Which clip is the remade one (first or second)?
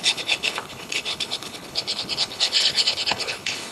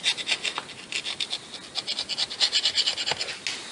first